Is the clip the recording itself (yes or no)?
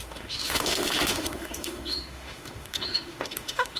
no